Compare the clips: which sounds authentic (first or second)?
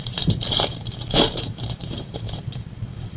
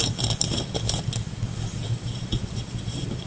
second